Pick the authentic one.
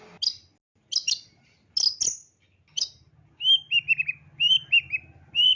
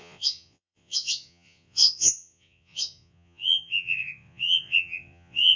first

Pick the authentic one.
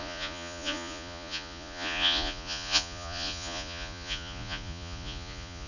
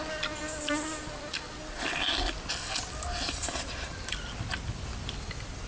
second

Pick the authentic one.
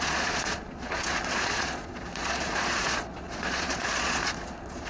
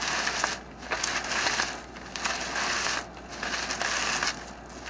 second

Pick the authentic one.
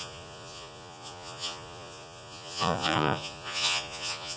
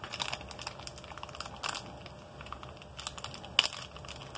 second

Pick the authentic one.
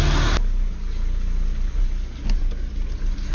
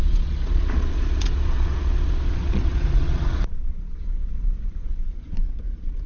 first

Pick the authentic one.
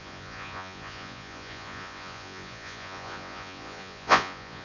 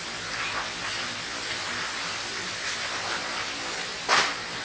second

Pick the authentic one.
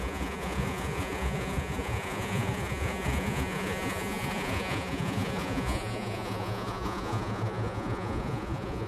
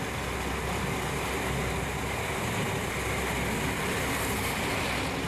second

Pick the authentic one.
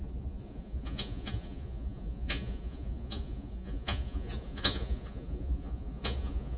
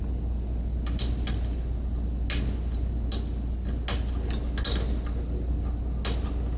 second